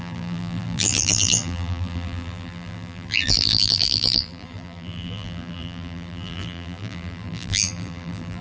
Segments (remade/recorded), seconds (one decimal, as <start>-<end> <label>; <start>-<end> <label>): 0.0-8.4 remade